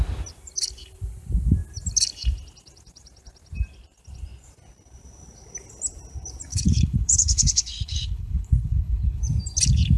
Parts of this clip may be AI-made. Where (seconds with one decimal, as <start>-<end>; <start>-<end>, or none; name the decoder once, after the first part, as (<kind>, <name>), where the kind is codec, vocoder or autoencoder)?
6.5-9.2 (codec, HILCodec)